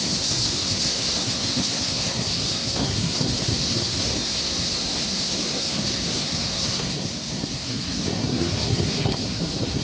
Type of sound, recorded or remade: remade